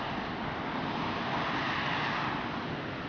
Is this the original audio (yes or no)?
yes